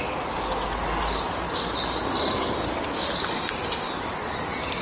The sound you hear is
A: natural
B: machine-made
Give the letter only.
A